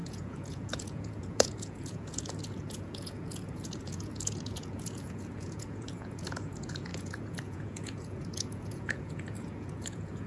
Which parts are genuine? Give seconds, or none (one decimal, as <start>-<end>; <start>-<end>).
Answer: none